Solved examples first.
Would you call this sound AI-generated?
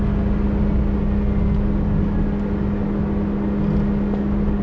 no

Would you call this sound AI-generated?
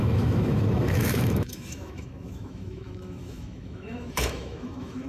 yes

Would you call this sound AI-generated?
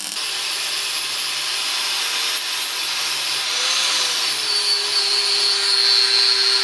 no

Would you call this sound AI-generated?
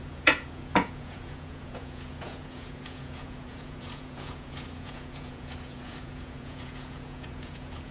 yes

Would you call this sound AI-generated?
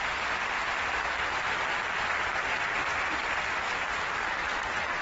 yes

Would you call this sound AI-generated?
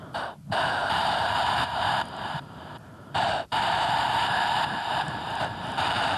yes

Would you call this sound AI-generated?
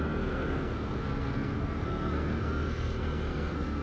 yes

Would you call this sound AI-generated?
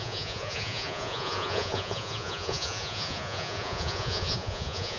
yes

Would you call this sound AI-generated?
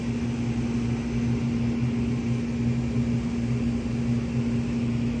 no